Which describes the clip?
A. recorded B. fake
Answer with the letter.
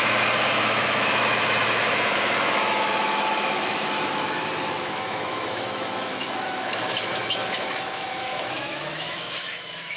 B